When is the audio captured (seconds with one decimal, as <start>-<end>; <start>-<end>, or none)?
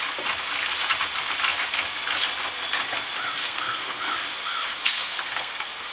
0.0-3.4; 4.0-4.7